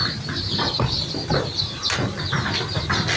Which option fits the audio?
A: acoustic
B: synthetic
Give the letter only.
A